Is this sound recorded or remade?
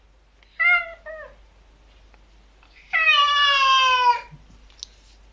recorded